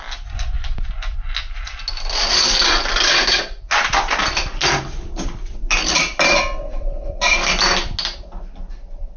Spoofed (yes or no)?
no